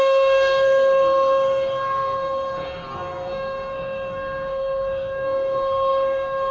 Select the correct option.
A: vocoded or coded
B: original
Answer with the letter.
A